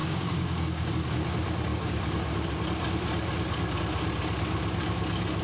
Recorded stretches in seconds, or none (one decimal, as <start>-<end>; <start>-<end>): 0.9-5.4